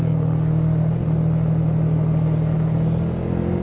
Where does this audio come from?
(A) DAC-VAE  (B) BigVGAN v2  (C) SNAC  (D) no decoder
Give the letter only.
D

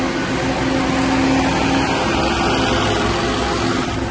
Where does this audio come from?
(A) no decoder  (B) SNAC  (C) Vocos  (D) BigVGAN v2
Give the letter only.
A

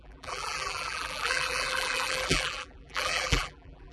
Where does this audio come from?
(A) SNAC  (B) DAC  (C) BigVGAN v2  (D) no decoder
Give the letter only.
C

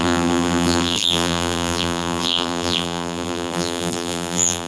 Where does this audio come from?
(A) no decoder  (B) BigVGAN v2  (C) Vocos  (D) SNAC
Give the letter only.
B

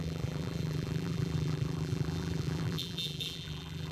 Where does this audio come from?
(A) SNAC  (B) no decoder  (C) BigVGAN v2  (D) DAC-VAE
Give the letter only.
C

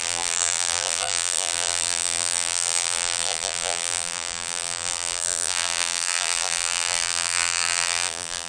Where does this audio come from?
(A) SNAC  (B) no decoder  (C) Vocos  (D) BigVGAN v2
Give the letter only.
D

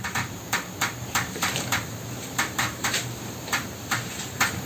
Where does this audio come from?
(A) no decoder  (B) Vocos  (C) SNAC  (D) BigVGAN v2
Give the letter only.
D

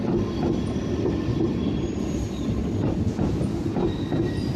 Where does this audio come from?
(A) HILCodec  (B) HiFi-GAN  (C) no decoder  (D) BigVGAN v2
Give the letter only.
C